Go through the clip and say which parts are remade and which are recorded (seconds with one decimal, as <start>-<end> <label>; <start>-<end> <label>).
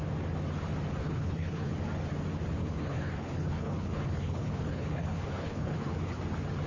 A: 0.0-1.0 recorded; 1.0-1.7 remade; 1.7-2.6 recorded; 2.6-6.2 remade; 6.2-6.7 recorded